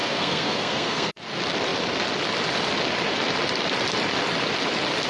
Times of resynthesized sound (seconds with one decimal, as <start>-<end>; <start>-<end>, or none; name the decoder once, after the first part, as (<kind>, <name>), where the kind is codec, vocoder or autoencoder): 0.0-1.1 (codec, SNAC)